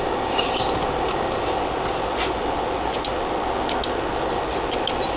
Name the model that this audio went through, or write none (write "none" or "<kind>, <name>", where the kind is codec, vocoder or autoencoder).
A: none